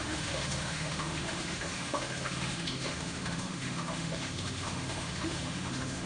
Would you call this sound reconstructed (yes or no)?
yes